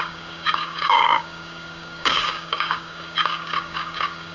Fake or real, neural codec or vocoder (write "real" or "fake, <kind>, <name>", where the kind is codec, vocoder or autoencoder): fake, codec, DAC